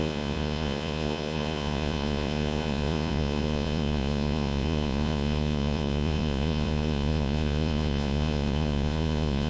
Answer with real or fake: fake